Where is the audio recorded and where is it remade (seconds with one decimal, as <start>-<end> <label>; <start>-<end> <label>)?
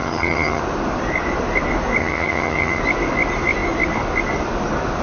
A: 0.0-0.6 remade; 0.6-2.0 recorded; 2.0-2.8 remade; 2.8-5.0 recorded